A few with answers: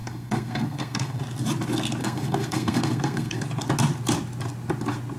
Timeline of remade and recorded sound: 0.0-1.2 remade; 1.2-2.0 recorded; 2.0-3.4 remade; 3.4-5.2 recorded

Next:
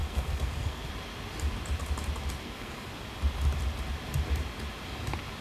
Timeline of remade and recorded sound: 0.0-0.9 remade; 0.9-2.4 recorded; 2.4-2.9 remade; 2.9-5.4 recorded

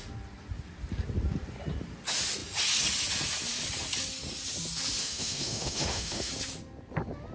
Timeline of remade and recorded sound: 0.0-5.0 recorded; 5.0-6.3 remade; 6.3-7.3 recorded

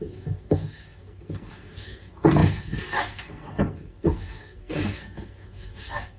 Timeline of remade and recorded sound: 0.0-6.2 remade